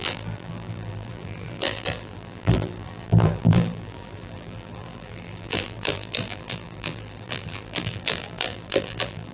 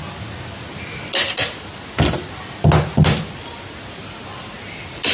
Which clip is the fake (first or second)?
first